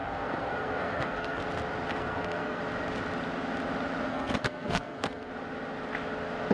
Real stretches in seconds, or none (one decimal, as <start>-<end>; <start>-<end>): 1.4-1.9; 2.6-4.1; 5.3-6.5